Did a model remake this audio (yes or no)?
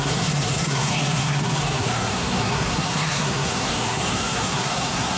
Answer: yes